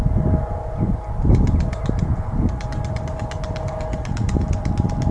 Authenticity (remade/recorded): recorded